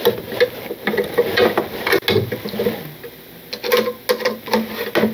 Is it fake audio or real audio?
real